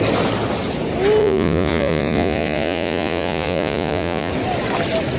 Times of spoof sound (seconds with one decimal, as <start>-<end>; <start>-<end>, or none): 1.2-4.3